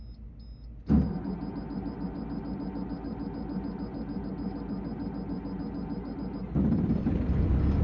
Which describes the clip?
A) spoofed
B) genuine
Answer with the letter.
B